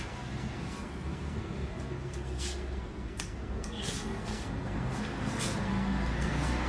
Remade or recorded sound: remade